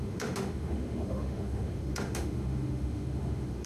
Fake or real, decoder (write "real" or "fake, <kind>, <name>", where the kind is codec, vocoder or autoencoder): fake, autoencoder, DAC-VAE